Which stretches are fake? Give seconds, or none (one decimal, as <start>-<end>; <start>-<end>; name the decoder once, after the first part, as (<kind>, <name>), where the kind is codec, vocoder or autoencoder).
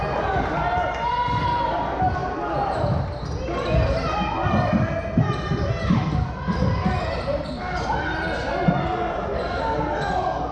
none